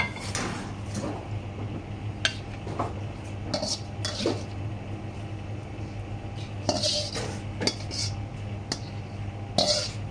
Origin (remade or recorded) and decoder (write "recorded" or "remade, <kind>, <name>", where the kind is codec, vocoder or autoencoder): recorded